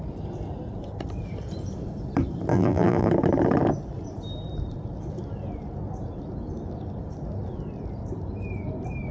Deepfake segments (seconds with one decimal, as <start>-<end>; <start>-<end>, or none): 2.5-3.1